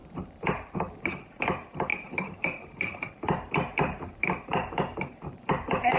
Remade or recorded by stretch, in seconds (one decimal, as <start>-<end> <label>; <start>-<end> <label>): 0.0-0.5 remade; 0.5-1.9 recorded; 1.9-5.5 remade; 5.5-6.0 recorded